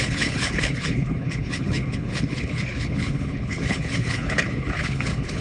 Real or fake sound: fake